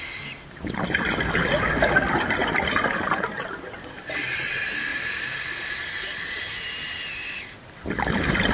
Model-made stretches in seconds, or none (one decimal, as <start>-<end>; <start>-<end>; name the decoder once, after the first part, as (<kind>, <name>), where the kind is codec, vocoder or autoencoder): none